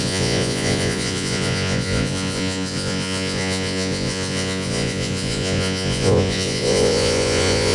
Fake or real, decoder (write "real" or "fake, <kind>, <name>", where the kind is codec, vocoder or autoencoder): fake, vocoder, Vocos